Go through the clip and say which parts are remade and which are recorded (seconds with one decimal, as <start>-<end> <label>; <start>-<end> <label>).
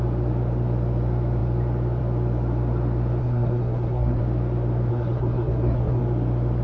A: 0.0-3.2 recorded; 3.2-4.2 remade; 4.2-4.9 recorded; 4.9-6.0 remade; 6.0-6.6 recorded